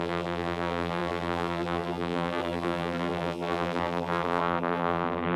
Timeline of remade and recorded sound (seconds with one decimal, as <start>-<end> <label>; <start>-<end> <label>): 0.0-5.4 remade